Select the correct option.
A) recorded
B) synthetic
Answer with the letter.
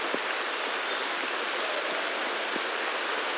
A